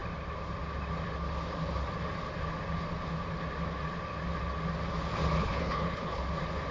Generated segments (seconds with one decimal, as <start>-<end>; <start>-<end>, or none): 5.4-6.2